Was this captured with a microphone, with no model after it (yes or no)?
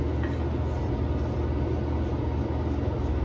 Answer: yes